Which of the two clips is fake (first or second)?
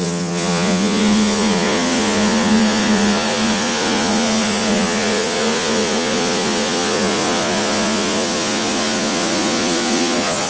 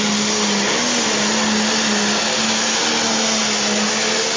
first